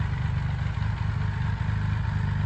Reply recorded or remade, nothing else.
recorded